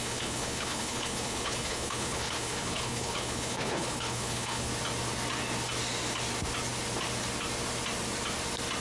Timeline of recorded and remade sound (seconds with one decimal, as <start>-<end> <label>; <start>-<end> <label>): 0.0-4.7 remade; 4.7-8.8 recorded